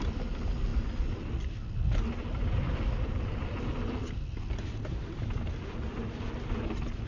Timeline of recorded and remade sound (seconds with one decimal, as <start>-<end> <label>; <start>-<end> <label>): 0.0-7.1 recorded